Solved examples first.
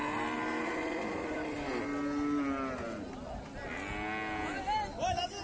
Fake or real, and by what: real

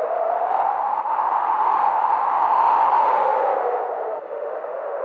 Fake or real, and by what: fake, autoencoder, DAC-VAE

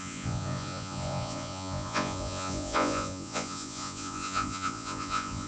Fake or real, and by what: fake, vocoder, Vocos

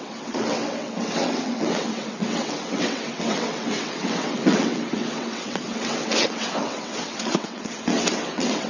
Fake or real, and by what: fake, vocoder, WaveNeXt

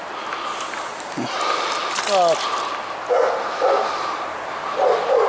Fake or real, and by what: real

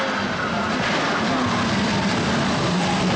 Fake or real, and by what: real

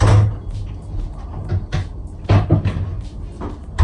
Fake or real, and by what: real